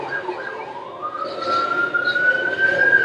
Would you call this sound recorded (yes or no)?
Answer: yes